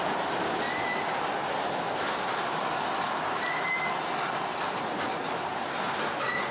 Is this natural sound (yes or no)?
yes